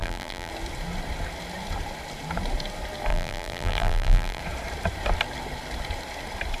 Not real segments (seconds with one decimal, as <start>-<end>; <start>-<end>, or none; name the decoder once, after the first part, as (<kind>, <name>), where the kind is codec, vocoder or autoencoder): 0.0-0.5 (vocoder, BigVGAN v2); 3.1-4.4